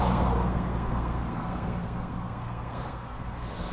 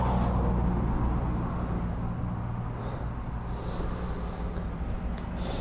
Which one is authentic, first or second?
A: second